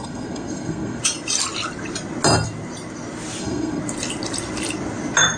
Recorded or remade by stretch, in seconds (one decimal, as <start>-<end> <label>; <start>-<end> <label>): 0.0-1.0 remade; 1.0-3.4 recorded; 3.4-3.8 remade; 3.8-5.4 recorded